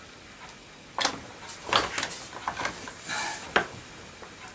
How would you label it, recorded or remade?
recorded